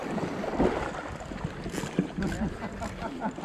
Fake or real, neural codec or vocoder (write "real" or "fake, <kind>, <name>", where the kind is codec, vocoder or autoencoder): real